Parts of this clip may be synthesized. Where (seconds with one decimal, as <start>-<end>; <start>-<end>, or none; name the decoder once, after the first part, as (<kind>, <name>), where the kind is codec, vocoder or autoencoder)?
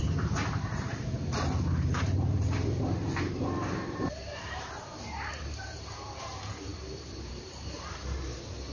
0.0-8.7 (vocoder, BigVGAN v2)